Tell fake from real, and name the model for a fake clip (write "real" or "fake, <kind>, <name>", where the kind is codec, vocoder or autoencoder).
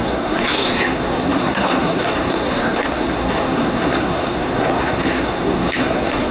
fake, codec, SNAC